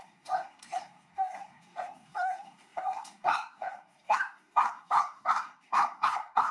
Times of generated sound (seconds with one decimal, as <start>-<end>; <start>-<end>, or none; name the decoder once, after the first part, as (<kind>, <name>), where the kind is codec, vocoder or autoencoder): 0.0-6.5 (codec, SNAC)

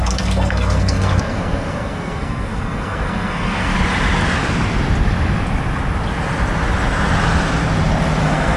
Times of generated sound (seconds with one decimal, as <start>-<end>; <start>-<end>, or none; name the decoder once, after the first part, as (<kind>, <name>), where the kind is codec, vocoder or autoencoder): 0.0-3.7 (codec, SNAC); 8.2-8.6

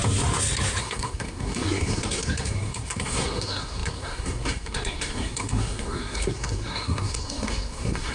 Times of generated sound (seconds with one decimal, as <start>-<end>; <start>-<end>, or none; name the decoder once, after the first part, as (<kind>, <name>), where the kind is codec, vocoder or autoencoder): 0.8-8.1 (codec, SNAC)

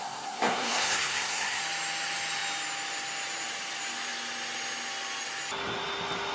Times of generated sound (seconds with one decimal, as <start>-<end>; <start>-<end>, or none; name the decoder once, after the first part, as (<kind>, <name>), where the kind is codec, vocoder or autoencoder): 0.0-1.6 (codec, SNAC)

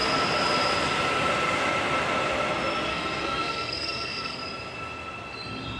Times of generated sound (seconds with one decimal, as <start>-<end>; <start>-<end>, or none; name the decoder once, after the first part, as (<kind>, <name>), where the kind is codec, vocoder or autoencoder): 2.9-4.4 (codec, SNAC)